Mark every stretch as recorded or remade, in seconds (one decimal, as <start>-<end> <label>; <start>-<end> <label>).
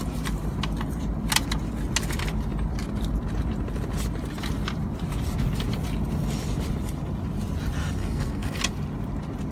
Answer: 0.0-8.0 recorded; 8.0-8.6 remade; 8.6-9.5 recorded